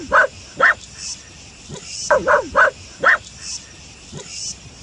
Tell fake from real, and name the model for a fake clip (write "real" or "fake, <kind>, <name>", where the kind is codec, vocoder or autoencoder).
real